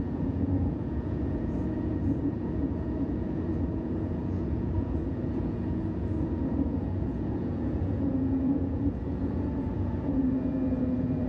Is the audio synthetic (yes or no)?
yes